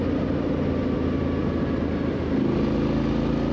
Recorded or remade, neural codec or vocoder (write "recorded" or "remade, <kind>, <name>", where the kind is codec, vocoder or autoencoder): recorded